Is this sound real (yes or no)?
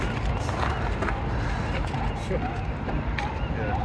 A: yes